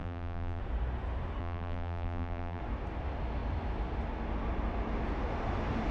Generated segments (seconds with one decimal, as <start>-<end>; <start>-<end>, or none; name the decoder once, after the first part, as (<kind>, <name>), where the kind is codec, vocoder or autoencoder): 0.0-0.6 (vocoder, BigVGAN v2); 1.4-2.6